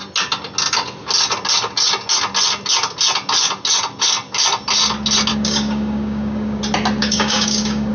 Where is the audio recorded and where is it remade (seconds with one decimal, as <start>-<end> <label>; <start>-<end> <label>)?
0.0-5.3 recorded; 5.3-6.6 remade; 6.6-7.0 recorded; 7.0-7.9 remade